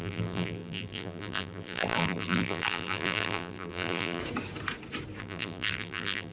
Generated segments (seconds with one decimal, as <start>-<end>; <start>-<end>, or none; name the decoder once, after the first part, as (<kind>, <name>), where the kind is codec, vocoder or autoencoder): 0.0-4.2 (vocoder, BigVGAN v2); 5.2-6.3

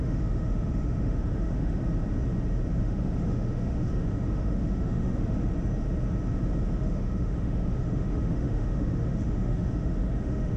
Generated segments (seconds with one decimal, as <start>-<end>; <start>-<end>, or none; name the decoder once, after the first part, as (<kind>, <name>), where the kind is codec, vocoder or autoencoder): 0.0-1.8 (autoencoder, DAC-VAE); 2.8-5.5; 6.8-10.6